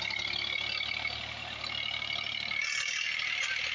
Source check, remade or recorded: recorded